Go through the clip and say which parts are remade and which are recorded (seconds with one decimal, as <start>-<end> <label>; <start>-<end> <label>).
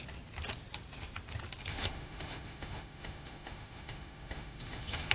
0.0-1.7 recorded; 1.7-5.1 remade